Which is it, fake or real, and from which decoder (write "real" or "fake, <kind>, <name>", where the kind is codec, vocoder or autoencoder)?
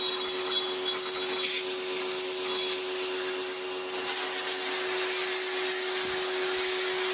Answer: real